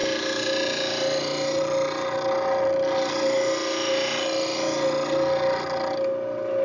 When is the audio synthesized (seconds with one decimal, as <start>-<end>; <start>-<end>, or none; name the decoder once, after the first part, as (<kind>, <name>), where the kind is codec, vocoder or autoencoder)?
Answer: none